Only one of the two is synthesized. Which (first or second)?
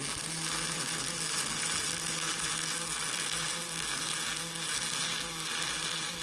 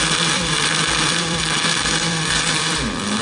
second